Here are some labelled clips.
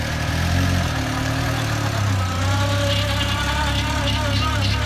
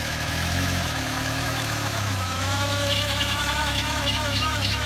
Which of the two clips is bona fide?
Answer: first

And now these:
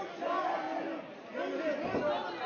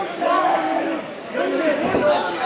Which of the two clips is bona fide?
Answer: first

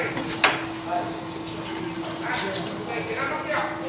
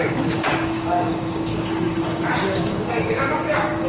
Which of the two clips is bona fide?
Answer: first